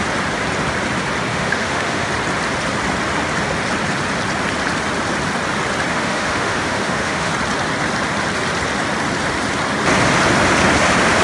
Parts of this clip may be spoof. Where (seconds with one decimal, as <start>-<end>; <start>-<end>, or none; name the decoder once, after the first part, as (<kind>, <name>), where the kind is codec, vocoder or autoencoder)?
1.3-2.1 (autoencoder, DAC-VAE); 5.9-7.3